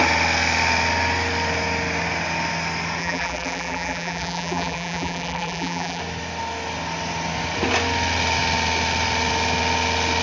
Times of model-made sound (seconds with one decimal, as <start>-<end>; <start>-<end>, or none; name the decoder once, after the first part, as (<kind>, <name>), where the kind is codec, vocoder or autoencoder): 3.0-6.0 (vocoder, BigVGAN v2)